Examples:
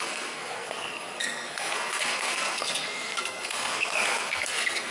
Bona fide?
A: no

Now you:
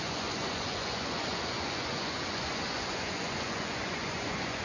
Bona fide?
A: no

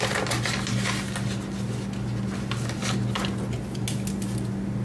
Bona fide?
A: yes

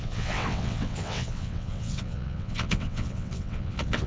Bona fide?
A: no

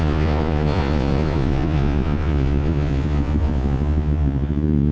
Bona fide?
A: no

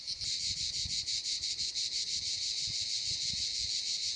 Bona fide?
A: yes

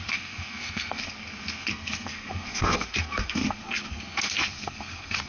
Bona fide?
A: no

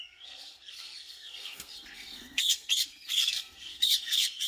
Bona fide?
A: no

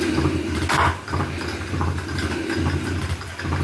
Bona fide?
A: yes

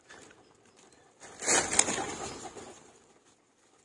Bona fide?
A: yes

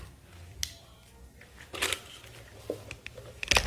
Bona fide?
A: yes